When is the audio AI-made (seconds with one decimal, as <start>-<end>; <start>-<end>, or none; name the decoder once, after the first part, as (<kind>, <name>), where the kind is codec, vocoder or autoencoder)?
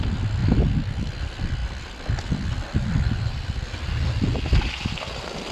none